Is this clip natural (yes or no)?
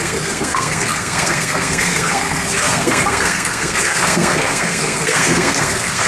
no